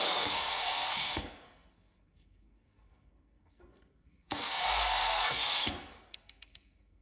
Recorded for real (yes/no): no